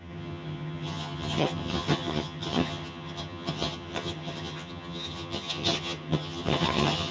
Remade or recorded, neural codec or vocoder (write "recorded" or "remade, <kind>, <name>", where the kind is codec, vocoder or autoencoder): remade, vocoder, HiFi-GAN